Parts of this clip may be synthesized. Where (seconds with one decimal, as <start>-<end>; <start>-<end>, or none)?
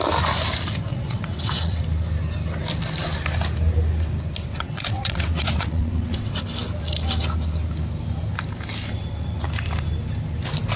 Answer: 0.9-1.8; 4.5-6.4